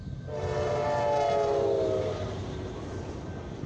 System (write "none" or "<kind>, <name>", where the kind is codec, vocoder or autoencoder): none